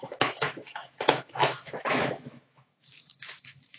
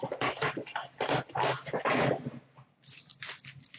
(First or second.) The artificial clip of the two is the first